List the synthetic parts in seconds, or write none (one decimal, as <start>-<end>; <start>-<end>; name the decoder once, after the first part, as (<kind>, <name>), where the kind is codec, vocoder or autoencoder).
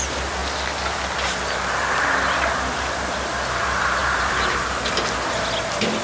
4.0-4.9 (vocoder, BigVGAN v2)